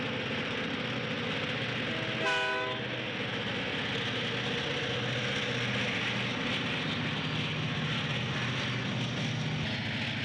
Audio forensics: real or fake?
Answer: real